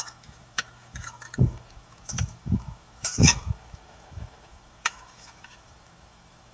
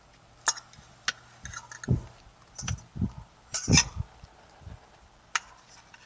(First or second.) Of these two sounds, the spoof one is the first